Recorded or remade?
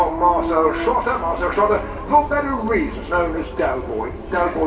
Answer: recorded